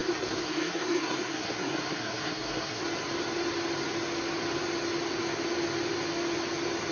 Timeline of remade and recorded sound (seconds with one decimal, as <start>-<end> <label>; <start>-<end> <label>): 0.0-2.8 remade; 2.8-6.9 recorded